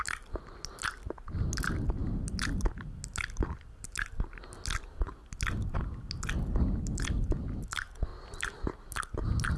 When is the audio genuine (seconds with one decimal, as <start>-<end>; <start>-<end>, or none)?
0.0-9.6